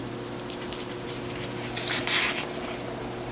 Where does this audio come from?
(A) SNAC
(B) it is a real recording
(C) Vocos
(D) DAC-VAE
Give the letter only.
B